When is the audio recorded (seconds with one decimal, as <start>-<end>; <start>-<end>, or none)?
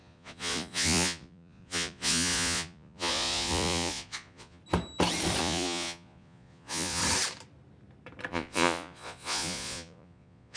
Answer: 4.6-5.4; 7.0-8.3